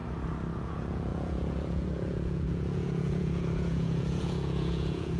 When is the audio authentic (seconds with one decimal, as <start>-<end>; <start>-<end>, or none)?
0.0-0.6